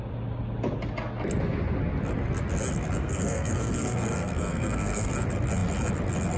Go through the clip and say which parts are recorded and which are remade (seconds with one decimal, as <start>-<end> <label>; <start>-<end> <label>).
0.0-3.0 recorded; 3.0-5.1 remade; 5.1-6.4 recorded